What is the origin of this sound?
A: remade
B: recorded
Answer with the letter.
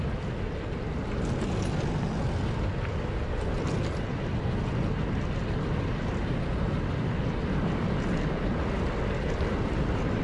B